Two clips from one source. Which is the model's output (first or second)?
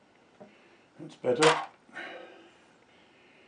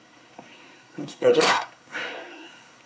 second